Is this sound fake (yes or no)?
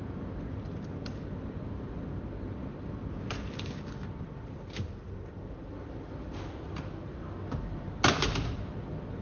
no